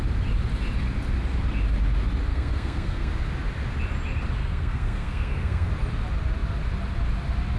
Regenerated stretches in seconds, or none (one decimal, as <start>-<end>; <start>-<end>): 2.3-3.1; 4.4-5.7